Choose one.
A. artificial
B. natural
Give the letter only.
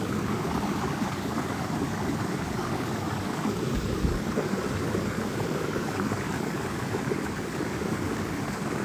A